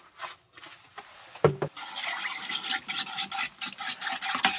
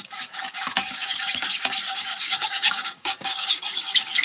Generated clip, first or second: second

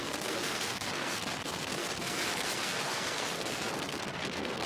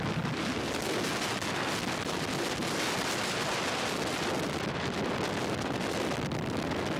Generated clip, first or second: first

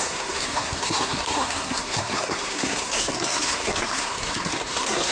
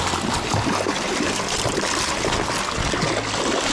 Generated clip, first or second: first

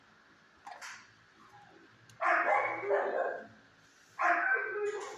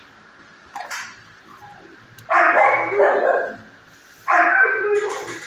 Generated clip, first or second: second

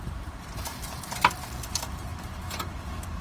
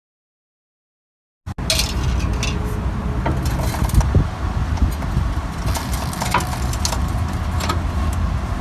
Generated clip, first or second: first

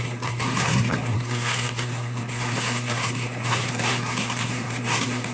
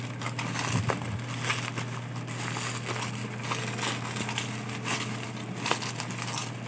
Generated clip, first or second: first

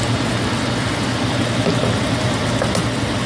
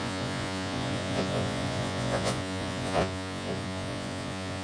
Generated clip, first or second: second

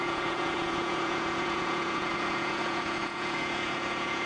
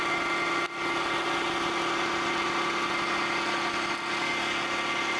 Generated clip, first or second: first